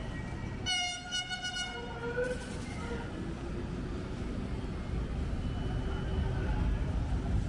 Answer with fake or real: real